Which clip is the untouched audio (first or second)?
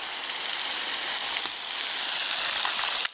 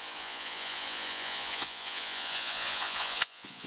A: first